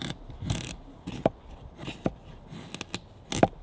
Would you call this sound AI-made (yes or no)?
no